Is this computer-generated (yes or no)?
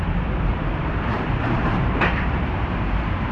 yes